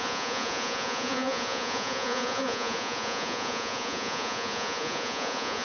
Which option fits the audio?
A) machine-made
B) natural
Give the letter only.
A